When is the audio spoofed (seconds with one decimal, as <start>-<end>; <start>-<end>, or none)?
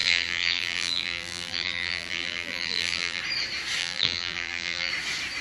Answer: 0.0-3.2; 3.8-4.9